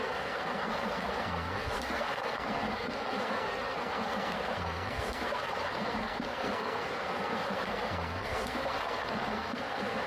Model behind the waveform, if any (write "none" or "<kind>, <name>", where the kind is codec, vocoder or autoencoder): codec, SNAC